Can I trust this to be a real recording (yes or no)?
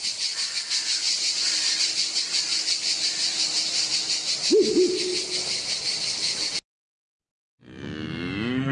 yes